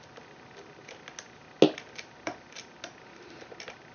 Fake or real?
real